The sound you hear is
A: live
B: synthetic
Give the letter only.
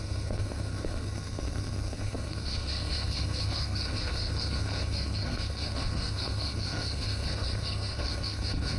B